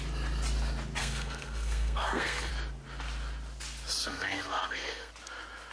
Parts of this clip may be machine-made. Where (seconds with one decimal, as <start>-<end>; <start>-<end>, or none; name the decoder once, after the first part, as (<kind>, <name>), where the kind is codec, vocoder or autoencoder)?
1.0-2.5 (codec, SNAC); 4.0-5.1

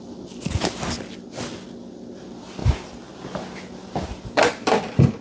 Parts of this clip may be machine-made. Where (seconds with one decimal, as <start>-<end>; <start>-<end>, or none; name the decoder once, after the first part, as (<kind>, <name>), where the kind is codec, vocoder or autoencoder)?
none